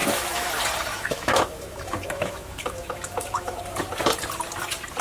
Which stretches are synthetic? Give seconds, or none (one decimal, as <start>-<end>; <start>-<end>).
0.0-0.5; 0.9-3.6